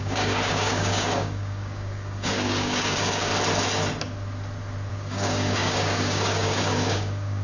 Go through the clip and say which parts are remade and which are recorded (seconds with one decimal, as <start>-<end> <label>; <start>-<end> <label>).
0.0-3.3 remade; 3.3-4.9 recorded; 4.9-7.4 remade